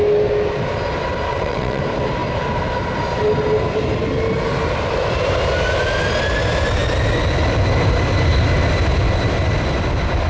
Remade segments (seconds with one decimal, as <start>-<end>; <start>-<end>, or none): 1.3-1.8